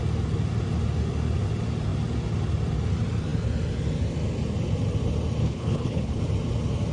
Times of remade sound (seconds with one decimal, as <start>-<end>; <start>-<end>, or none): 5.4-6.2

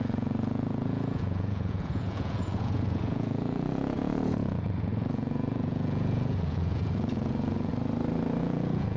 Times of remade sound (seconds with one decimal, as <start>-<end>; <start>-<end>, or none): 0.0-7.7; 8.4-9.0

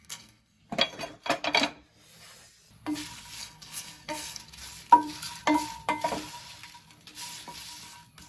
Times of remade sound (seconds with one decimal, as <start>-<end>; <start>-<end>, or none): 0.0-0.6; 3.4-4.4